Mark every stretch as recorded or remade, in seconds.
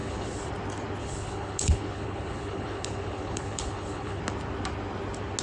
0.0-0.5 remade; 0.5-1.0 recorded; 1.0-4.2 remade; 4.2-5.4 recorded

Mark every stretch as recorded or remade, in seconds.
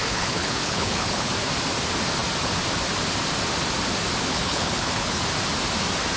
0.0-1.3 remade; 1.3-4.3 recorded; 4.3-5.2 remade; 5.2-6.2 recorded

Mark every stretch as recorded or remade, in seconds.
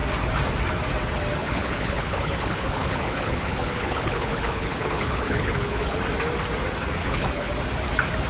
0.0-1.4 recorded; 1.4-6.0 remade; 6.0-7.0 recorded; 7.0-7.5 remade; 7.5-8.3 recorded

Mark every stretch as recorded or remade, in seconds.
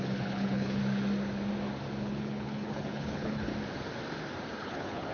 0.0-0.8 remade; 0.8-2.0 recorded; 2.0-3.5 remade; 3.5-4.6 recorded; 4.6-5.1 remade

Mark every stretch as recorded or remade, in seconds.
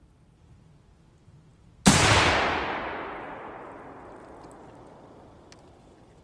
0.0-6.2 recorded